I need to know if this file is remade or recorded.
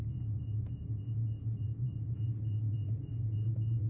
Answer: remade